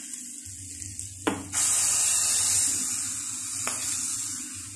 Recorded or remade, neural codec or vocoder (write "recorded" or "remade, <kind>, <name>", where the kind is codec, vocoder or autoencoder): recorded